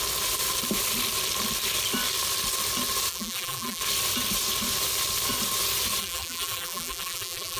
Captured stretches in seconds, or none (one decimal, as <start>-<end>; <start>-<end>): 0.0-3.1; 3.8-6.0